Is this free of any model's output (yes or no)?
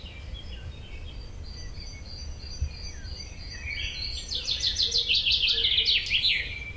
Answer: yes